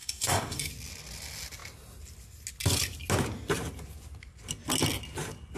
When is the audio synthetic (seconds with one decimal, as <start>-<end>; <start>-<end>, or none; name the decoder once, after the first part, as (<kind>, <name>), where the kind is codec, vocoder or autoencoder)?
0.0-0.7 (codec, DAC)